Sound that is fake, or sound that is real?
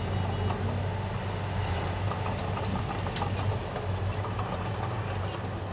real